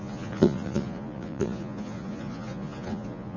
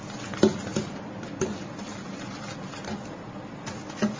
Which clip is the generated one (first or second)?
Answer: first